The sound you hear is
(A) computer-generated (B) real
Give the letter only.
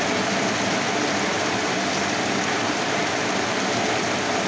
B